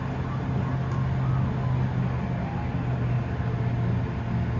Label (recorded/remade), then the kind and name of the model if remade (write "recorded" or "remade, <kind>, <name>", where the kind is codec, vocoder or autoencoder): recorded